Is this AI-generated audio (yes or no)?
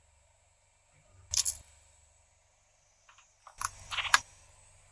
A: no